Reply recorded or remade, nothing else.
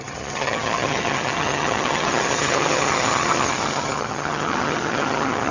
remade